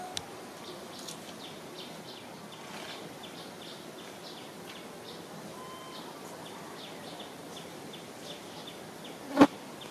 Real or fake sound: real